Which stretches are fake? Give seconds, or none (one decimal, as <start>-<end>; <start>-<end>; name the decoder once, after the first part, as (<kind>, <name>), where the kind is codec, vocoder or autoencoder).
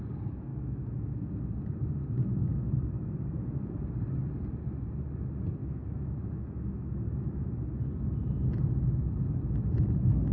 0.5-1.3 (autoencoder, DAC-VAE); 2.5-3.8; 5.6-7.5